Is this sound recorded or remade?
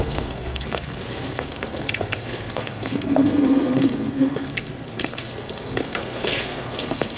remade